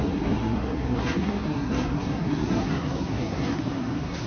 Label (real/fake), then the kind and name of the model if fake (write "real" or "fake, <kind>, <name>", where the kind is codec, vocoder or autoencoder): fake, codec, SNAC